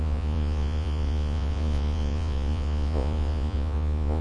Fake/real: fake